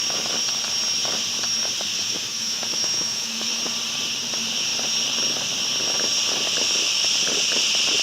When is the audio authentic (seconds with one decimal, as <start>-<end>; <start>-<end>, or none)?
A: 0.0-1.9; 3.6-8.0